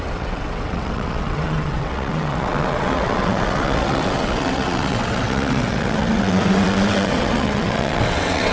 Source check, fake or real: fake